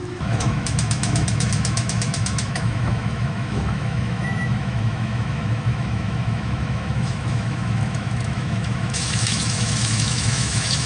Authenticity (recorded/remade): remade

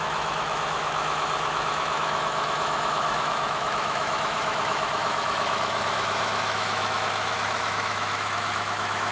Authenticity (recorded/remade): remade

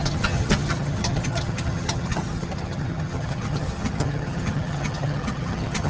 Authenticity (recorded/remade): remade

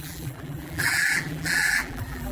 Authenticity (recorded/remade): remade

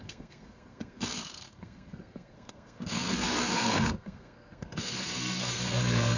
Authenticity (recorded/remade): remade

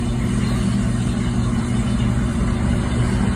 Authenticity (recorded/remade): recorded